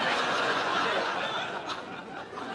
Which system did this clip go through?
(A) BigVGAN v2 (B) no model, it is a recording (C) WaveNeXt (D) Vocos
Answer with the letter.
D